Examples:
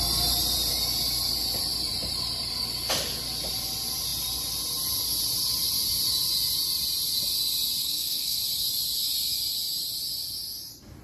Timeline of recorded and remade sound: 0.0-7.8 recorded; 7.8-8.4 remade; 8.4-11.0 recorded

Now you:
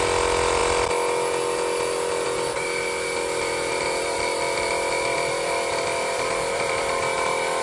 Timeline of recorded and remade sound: 0.0-0.6 remade; 0.6-3.4 recorded; 3.4-7.6 remade

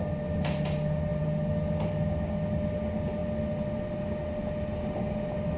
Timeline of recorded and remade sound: 0.0-5.6 recorded

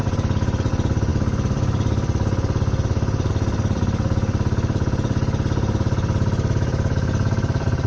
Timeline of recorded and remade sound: 0.0-7.9 remade